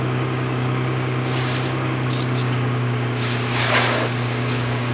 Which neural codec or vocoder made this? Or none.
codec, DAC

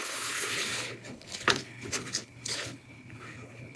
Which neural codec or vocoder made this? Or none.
codec, HILCodec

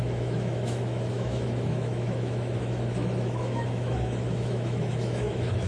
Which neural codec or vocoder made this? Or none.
autoencoder, DAC-VAE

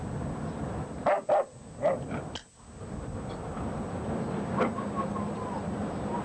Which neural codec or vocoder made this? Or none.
none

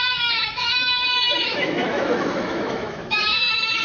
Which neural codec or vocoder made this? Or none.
autoencoder, DAC-VAE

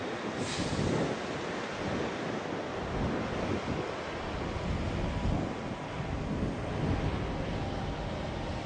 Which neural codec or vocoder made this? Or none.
none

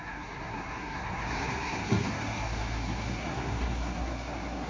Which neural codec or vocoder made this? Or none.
codec, SNAC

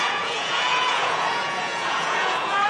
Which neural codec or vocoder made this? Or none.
vocoder, Vocos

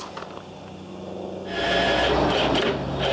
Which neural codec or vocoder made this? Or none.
none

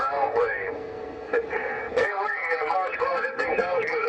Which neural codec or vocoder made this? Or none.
codec, SNAC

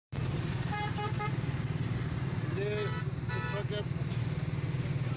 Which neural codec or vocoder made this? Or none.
none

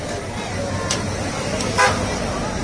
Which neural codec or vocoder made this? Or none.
vocoder, BigVGAN v2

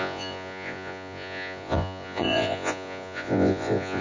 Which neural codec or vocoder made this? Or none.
vocoder, Vocos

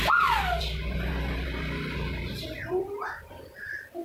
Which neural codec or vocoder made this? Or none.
none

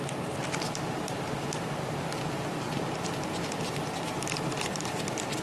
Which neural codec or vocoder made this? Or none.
none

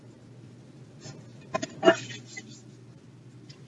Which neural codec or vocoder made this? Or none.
none